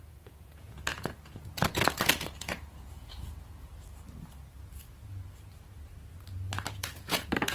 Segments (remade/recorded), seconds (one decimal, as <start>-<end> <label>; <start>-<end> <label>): 0.0-3.7 remade; 3.7-6.7 recorded; 6.7-7.5 remade